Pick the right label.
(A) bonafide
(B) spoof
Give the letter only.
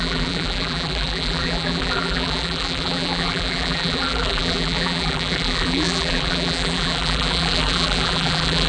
B